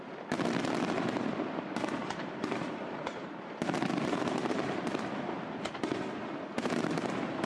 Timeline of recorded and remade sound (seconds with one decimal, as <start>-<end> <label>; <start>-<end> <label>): 0.0-2.0 recorded; 2.0-4.8 remade; 4.8-7.5 recorded